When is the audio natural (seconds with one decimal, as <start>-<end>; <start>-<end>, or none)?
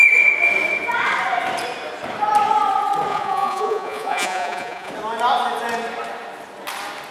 0.0-3.1; 4.9-7.1